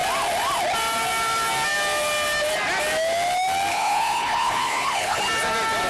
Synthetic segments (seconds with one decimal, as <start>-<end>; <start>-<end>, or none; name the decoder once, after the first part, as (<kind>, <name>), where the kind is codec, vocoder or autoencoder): 3.7-5.2 (codec, HILCodec)